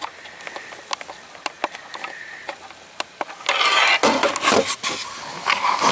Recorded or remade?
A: recorded